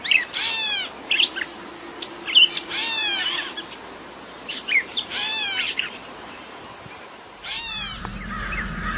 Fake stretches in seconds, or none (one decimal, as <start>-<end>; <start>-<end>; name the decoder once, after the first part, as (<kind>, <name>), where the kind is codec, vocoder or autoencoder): 4.5-8.0 (vocoder, BigVGAN v2)